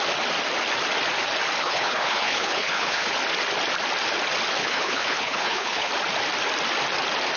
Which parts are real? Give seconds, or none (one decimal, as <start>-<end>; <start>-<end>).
0.0-1.6; 3.1-4.6; 5.9-7.4